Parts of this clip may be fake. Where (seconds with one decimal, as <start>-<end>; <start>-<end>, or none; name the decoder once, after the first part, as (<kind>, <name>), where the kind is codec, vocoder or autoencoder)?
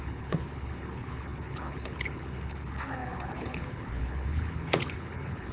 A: 0.0-5.5 (codec, HILCodec)